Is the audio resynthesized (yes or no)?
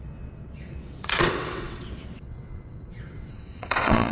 yes